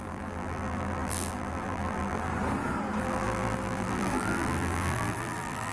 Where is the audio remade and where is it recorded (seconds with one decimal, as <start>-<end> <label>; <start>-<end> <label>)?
0.0-2.3 remade; 2.3-3.0 recorded; 3.0-5.7 remade